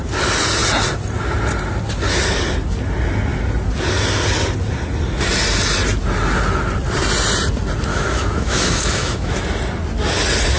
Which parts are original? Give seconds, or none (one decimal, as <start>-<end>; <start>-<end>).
0.0-7.9; 9.4-10.6